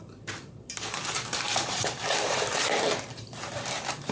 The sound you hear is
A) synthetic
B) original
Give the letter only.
A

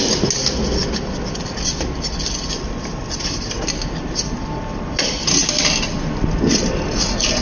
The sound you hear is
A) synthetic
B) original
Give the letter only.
B